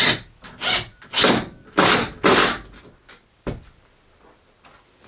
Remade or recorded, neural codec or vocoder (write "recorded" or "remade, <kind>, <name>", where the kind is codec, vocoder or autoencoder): recorded